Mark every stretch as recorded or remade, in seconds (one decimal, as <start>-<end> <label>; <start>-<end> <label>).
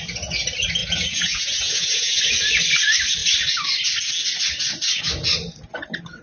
0.0-0.8 recorded; 0.8-2.2 remade; 2.2-6.2 recorded